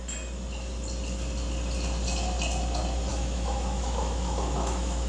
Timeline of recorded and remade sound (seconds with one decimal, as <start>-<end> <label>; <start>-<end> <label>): 0.0-3.1 recorded; 3.1-5.1 remade